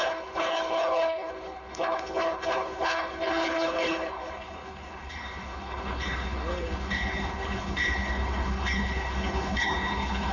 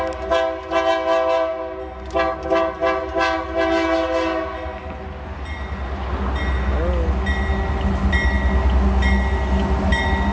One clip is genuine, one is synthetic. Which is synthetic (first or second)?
first